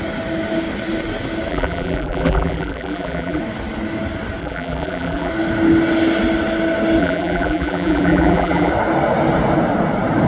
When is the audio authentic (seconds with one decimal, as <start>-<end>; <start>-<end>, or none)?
0.0-1.5; 3.4-4.4; 5.3-7.0; 8.7-10.3